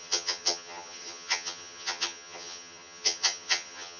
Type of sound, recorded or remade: remade